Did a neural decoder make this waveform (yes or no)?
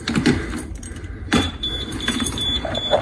yes